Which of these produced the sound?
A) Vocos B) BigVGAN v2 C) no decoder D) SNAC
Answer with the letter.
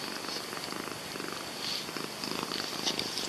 C